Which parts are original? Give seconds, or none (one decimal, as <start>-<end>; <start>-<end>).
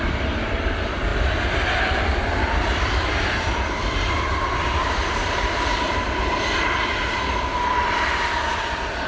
1.1-1.8